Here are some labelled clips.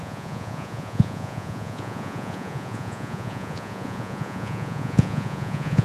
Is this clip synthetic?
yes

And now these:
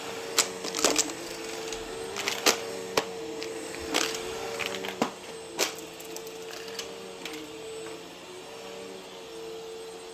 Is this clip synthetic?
no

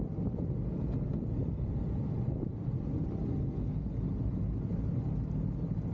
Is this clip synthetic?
no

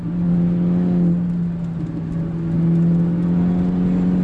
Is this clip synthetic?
no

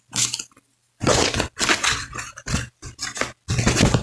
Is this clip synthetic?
no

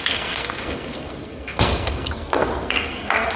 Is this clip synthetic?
yes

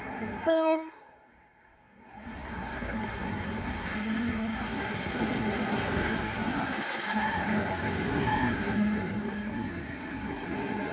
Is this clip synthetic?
yes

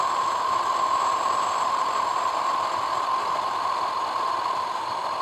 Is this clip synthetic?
yes